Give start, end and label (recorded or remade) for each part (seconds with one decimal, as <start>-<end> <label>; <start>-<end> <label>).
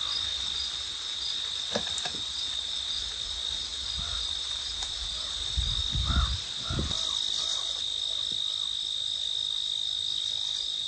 0.0-10.9 recorded